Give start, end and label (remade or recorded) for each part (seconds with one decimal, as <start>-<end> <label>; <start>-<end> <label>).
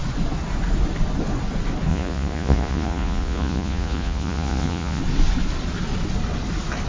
0.0-1.9 recorded; 1.9-5.0 remade; 5.0-6.9 recorded